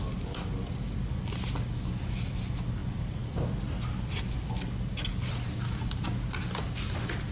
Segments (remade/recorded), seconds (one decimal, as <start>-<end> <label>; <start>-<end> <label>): 0.0-7.3 recorded